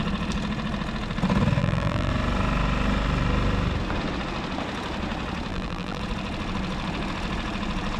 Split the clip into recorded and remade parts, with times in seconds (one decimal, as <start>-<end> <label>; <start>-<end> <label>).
0.0-1.6 recorded; 1.6-2.1 remade; 2.1-5.5 recorded; 5.5-6.0 remade; 6.0-8.0 recorded